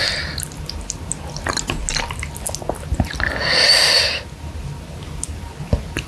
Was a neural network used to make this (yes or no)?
no